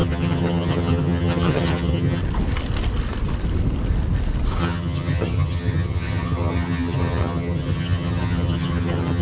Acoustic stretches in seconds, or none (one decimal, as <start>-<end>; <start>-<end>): 2.2-4.6